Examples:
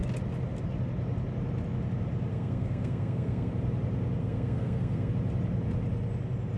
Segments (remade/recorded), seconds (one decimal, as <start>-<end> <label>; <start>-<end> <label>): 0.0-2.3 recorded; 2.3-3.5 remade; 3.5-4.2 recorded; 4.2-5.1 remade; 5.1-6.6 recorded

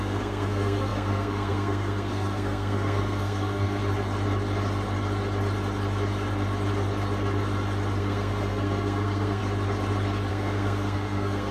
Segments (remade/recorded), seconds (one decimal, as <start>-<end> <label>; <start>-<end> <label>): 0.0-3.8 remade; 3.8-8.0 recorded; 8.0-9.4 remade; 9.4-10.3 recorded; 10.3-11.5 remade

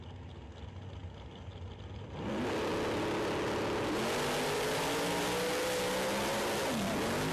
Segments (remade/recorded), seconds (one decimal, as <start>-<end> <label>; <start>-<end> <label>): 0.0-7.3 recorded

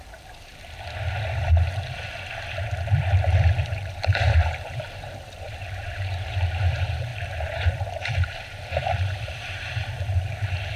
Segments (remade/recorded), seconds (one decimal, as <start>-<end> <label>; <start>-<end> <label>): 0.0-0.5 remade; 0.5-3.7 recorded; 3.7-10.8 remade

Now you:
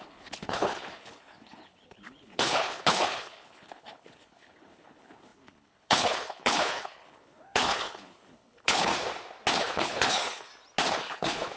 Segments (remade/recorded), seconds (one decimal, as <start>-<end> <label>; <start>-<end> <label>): 0.0-8.9 remade; 8.9-9.6 recorded; 9.6-10.5 remade; 10.5-11.0 recorded; 11.0-11.6 remade

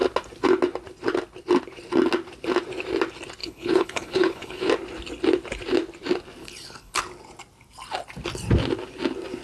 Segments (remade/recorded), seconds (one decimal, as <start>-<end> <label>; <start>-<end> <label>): 0.0-3.4 recorded; 3.4-4.7 remade; 4.7-6.4 recorded; 6.4-7.0 remade; 7.0-9.4 recorded